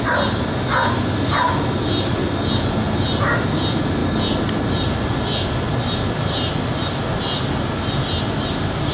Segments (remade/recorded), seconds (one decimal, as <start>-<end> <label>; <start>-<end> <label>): 0.0-8.9 recorded